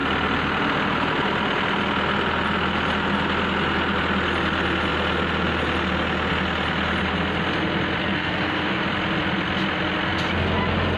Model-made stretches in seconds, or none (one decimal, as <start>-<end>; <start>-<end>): 8.0-8.8